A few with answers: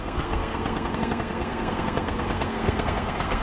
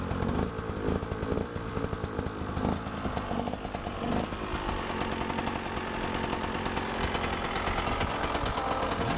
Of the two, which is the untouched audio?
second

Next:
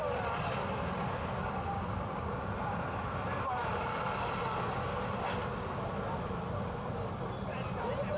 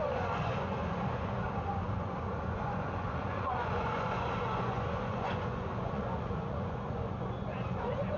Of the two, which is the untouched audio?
first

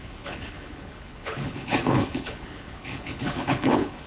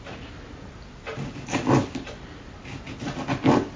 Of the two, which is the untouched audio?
second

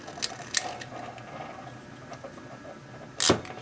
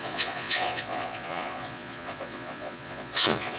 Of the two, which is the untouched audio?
first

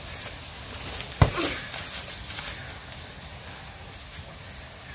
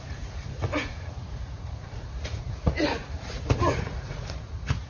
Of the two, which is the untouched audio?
first